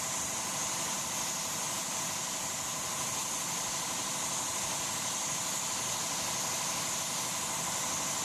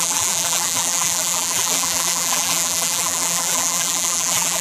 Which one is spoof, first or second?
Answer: second